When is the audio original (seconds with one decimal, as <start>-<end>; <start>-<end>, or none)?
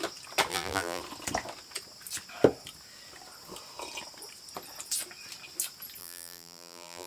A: 0.0-0.5; 1.0-6.0